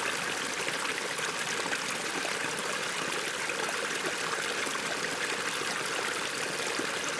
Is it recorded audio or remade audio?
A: recorded